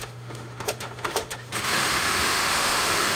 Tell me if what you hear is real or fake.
fake